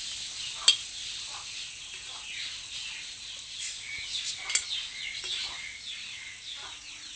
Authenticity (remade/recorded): recorded